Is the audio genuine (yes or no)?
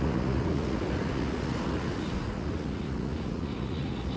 no